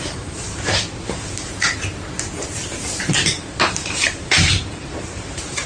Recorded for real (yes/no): no